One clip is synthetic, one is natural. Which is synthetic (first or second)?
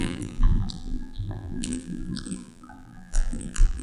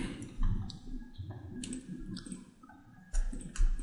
first